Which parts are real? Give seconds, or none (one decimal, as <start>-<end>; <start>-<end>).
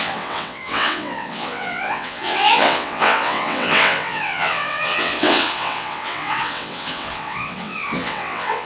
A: none